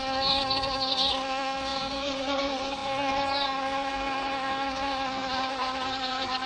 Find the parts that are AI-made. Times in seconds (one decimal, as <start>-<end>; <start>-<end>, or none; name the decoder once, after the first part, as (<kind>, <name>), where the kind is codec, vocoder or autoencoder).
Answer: 0.0-6.5 (codec, SNAC)